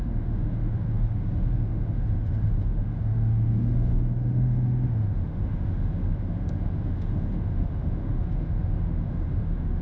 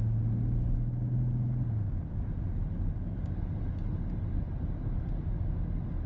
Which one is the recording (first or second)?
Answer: second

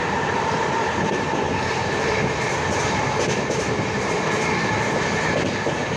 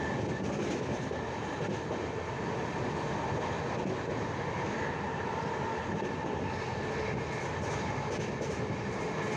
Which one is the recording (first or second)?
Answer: second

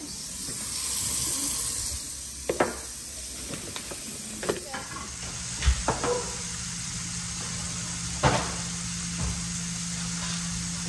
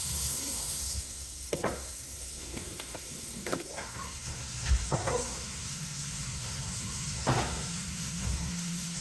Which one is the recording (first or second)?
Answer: first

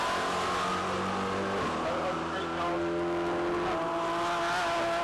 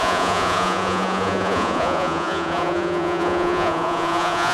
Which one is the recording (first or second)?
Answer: first